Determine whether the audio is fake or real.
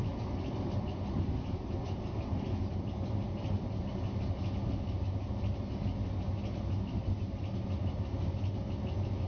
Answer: real